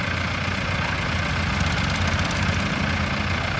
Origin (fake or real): real